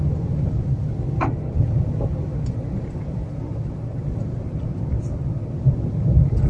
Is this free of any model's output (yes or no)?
yes